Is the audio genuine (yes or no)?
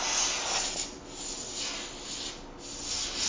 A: yes